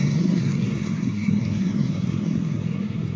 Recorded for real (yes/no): no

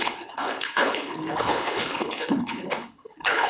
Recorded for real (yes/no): no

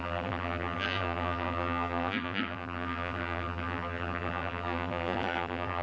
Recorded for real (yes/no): no